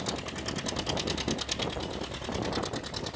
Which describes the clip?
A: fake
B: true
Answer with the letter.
B